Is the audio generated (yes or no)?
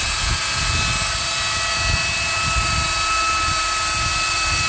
no